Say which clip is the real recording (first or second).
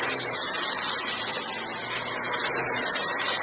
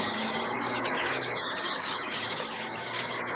first